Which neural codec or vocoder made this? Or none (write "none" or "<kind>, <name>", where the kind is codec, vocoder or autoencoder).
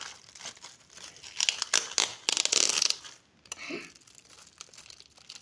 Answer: none